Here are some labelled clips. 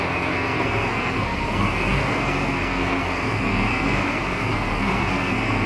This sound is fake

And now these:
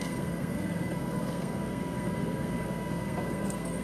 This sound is fake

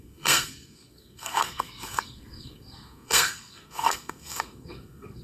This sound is fake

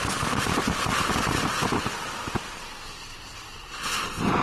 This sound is real